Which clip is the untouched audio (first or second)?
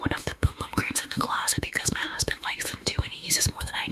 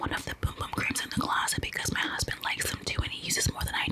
second